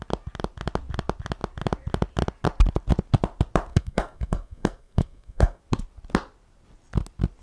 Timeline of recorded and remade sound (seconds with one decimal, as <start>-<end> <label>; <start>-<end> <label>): 0.0-3.7 recorded; 3.7-5.6 remade; 5.6-7.4 recorded

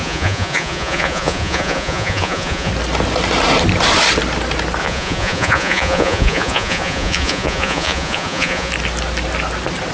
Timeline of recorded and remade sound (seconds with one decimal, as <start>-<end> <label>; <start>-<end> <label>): 0.0-2.7 remade; 2.7-4.8 recorded; 4.8-8.7 remade; 8.7-9.9 recorded